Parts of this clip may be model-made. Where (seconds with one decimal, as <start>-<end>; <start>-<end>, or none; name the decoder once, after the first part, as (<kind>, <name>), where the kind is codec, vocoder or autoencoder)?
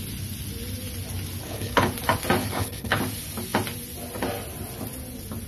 1.4-1.9 (codec, HILCodec); 2.4-3.0